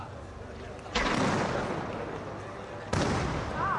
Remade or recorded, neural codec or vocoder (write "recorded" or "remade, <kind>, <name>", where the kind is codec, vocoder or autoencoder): recorded